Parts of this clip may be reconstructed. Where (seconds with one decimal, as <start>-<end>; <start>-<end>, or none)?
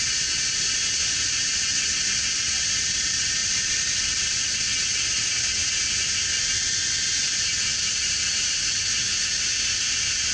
3.4-4.6; 7.7-8.7